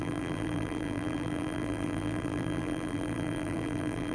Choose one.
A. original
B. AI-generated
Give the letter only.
B